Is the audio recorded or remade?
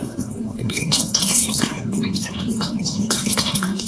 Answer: remade